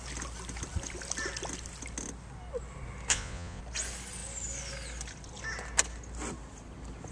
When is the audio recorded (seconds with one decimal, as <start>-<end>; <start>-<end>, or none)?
0.0-3.1; 3.6-7.1